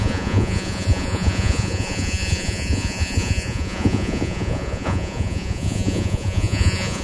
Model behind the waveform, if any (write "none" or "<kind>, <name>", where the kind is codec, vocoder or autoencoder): vocoder, Vocos